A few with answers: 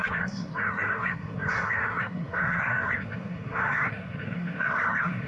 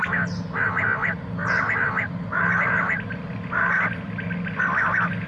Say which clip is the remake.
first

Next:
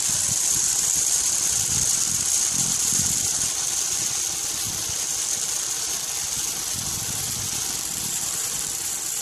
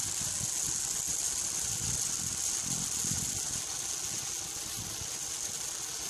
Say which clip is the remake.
first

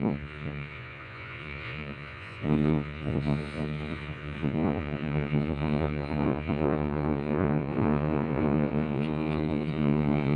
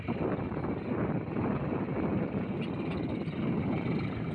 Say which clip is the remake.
first